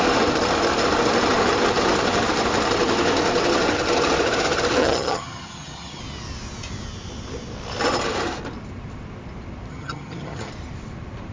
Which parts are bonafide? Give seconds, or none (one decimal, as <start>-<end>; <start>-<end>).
0.0-4.8; 6.0-9.7; 10.5-11.3